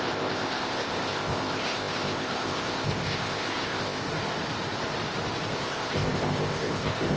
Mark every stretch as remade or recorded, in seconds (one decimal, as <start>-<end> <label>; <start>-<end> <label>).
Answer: 0.0-4.0 remade; 4.0-5.5 recorded; 5.5-7.2 remade